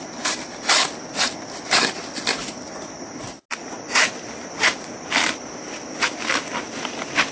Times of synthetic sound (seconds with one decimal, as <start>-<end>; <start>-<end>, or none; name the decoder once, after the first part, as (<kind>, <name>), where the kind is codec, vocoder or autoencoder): none